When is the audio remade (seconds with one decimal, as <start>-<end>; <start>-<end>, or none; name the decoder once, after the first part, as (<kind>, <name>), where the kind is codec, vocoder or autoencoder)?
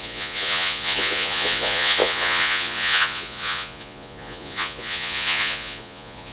0.0-6.3 (vocoder, Vocos)